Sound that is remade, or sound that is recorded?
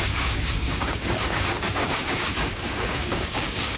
remade